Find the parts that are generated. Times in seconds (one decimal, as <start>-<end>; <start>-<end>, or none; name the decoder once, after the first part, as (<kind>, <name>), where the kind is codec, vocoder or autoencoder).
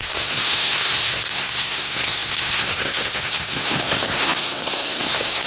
0.0-5.5 (codec, SNAC)